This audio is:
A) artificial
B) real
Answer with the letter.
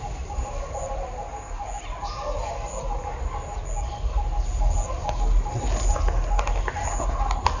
B